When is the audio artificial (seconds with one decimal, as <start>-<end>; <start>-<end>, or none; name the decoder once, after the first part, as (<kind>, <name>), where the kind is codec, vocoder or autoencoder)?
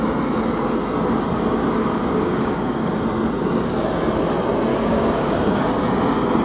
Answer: 1.6-3.0 (codec, DAC); 4.7-5.6